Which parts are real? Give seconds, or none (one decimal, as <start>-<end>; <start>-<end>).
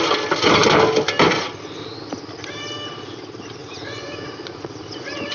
0.0-3.6